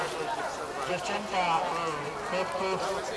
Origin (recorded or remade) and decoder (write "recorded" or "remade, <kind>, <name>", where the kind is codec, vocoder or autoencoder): recorded